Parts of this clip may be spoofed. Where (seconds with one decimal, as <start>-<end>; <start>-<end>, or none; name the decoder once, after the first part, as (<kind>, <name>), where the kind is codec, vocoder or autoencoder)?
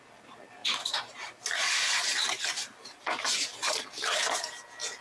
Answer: 0.6-3.0 (vocoder, BigVGAN v2)